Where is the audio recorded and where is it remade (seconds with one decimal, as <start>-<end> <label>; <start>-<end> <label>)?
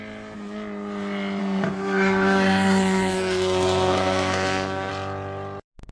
0.0-1.4 recorded; 1.4-4.9 remade; 4.9-5.9 recorded